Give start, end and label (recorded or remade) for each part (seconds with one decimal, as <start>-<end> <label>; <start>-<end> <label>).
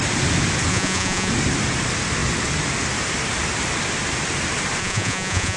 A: 0.0-0.7 recorded; 0.7-1.3 remade; 1.3-4.8 recorded; 4.8-5.6 remade